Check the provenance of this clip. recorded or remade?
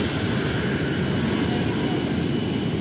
recorded